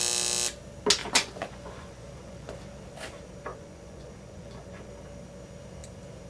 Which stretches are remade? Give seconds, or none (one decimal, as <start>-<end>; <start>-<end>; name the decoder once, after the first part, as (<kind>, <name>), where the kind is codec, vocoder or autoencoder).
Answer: 1.0-2.6 (vocoder, Vocos); 3.5-4.9